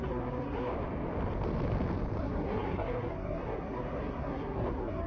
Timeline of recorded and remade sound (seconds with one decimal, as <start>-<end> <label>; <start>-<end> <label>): 0.0-0.7 remade; 0.7-2.2 recorded; 2.2-5.1 remade